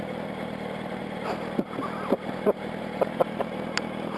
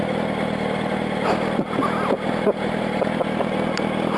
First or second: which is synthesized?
first